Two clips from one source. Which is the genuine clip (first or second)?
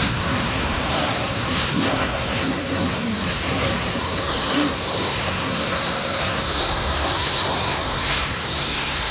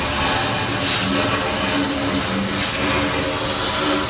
second